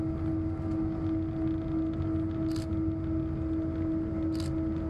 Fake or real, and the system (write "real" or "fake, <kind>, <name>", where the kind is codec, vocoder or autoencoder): real